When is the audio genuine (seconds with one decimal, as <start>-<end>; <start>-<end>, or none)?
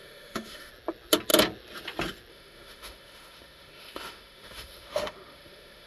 0.7-2.3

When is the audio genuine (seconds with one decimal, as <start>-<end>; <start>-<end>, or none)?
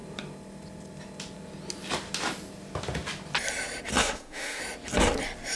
0.0-4.0; 4.6-5.6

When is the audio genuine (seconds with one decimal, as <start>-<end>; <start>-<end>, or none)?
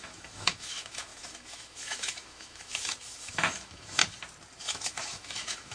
4.0-4.6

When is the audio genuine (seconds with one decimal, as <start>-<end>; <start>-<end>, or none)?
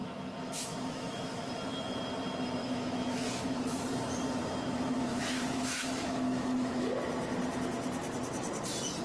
1.5-2.6; 3.8-5.1; 6.8-9.0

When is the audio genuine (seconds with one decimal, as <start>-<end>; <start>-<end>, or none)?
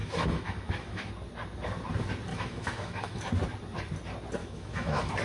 1.1-2.3; 3.3-4.4